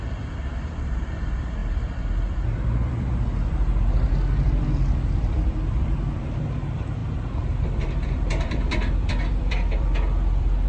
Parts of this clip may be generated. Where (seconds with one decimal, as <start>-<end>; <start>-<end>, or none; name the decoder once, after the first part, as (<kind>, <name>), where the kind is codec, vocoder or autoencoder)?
0.0-10.7 (vocoder, BigVGAN v2)